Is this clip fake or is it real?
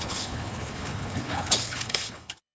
fake